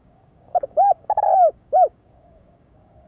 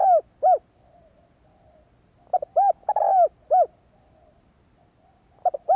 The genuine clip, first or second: second